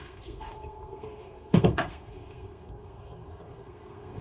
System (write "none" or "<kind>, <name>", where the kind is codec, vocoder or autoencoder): codec, SNAC